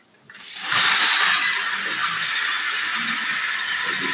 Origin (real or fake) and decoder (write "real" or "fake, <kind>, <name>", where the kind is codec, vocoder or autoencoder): real